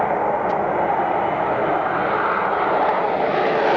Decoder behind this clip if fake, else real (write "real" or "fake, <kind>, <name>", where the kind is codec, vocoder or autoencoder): real